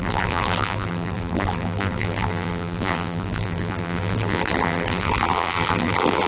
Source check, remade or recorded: remade